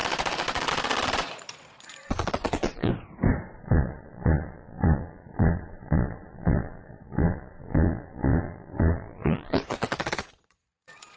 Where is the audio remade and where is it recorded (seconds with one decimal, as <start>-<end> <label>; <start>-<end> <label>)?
0.0-2.9 remade; 2.9-3.6 recorded; 3.6-11.2 remade